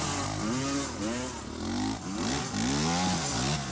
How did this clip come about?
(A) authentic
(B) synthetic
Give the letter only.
A